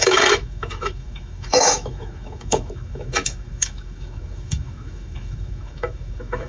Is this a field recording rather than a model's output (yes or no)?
no